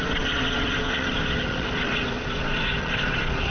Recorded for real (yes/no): no